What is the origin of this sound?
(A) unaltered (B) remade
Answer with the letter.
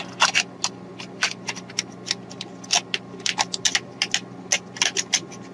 A